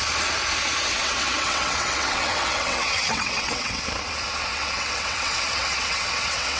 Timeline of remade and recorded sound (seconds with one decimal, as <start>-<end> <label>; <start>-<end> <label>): 0.0-0.9 recorded; 0.9-3.8 remade; 3.8-4.5 recorded; 4.5-6.6 remade